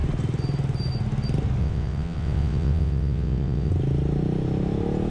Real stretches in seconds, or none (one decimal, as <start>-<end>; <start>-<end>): 0.0-1.6; 3.7-5.1